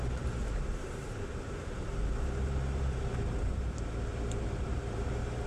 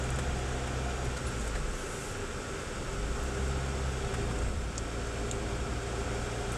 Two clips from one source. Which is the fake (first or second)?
first